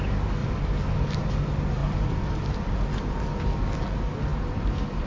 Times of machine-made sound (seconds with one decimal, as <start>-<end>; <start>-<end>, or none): 0.4-1.3; 1.8-2.7; 4.3-5.1